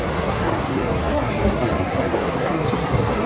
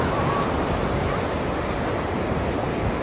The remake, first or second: first